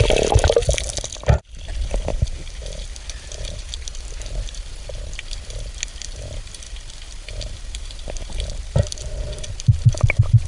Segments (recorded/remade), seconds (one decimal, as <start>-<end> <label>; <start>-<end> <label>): 0.0-2.1 recorded; 2.1-2.9 remade; 2.9-10.5 recorded